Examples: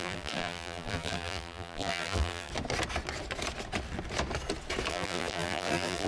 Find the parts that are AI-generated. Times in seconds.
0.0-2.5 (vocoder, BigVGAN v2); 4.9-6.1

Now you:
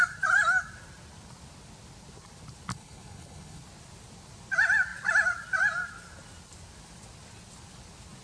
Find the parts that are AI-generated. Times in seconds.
2.7-3.6 (codec, HILCodec)

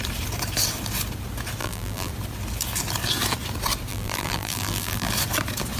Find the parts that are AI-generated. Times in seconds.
1.6-2.1 (vocoder, BigVGAN v2); 3.9-5.1

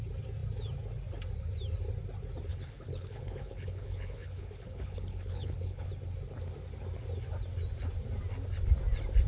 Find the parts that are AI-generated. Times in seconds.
2.5-5.9 (codec, HILCodec)